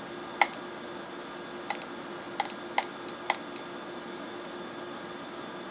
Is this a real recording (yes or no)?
yes